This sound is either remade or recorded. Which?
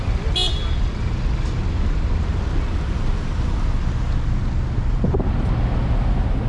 recorded